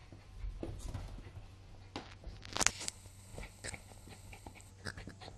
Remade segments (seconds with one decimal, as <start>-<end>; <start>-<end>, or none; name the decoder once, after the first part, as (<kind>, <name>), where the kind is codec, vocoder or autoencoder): 2.7-4.7 (codec, HILCodec)